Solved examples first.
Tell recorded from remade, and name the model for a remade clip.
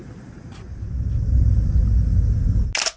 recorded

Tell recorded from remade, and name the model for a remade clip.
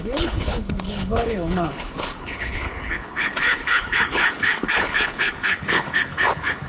remade, codec, HILCodec